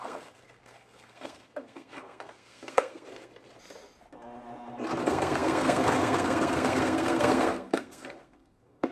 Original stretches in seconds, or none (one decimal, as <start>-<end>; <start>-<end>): 3.3-5.0